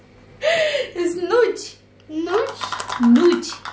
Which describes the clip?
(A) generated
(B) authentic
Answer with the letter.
B